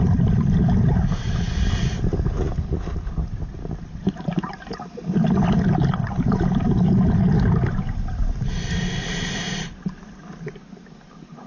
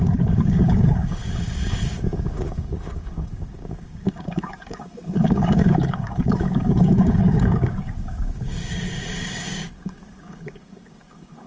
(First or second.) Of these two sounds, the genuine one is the first